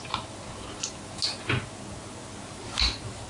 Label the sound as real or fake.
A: real